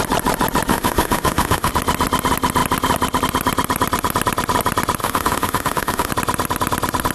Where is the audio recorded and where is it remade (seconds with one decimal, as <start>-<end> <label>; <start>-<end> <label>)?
0.0-0.7 recorded; 0.7-1.7 remade; 1.7-5.0 recorded; 5.0-6.1 remade; 6.1-7.1 recorded